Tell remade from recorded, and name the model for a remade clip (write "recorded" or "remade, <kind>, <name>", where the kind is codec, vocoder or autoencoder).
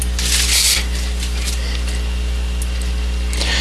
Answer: recorded